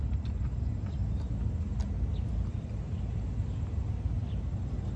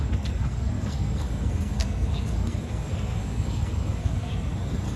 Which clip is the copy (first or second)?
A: second